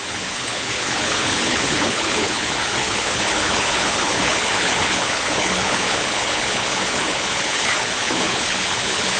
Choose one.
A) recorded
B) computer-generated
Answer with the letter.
B